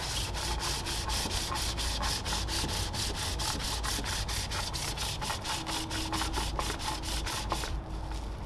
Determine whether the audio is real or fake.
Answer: real